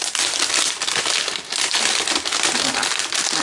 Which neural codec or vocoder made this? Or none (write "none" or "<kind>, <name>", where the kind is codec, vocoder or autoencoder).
none